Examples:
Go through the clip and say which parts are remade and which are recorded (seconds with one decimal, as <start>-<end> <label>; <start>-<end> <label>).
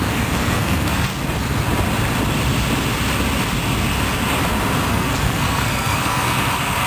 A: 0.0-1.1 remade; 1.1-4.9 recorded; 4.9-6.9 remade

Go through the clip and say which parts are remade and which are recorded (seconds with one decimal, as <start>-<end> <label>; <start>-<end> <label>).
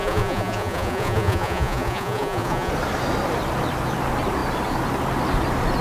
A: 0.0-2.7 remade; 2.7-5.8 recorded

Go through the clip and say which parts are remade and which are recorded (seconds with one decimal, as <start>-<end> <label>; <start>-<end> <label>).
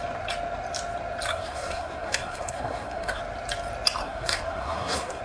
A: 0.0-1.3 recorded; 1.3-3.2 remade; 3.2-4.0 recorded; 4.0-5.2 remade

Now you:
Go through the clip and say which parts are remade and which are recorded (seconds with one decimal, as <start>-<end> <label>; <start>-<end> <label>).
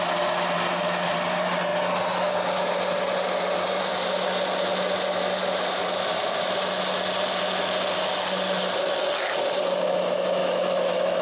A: 0.0-10.4 recorded; 10.4-11.2 remade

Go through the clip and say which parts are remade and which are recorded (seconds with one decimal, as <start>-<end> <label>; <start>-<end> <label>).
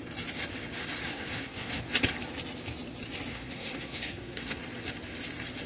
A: 0.0-1.1 recorded; 1.1-1.8 remade; 1.8-3.3 recorded; 3.3-4.6 remade; 4.6-5.7 recorded